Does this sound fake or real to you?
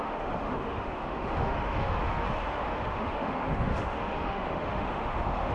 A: fake